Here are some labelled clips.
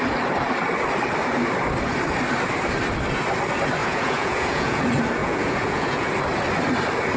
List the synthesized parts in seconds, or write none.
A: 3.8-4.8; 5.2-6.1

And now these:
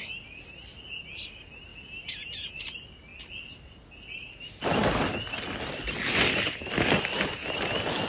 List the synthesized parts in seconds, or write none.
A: none

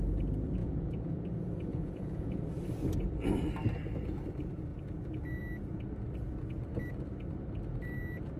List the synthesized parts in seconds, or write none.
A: 0.6-1.2; 1.7-2.4

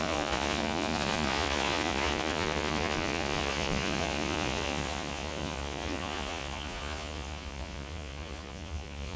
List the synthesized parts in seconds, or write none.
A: 0.0-9.2

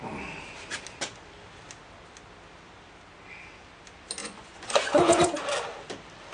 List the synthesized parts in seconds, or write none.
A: 4.2-5.4